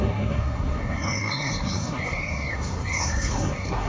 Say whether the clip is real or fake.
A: fake